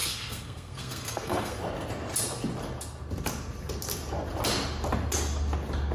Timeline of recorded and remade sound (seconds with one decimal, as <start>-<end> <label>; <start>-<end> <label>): 0.0-1.6 remade; 1.6-5.9 recorded